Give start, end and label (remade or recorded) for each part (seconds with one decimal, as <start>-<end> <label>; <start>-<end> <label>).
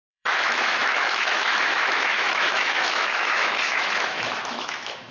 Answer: 0.0-5.1 remade